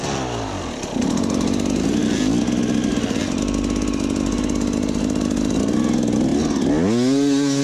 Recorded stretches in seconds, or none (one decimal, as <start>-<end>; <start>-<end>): 0.0-7.6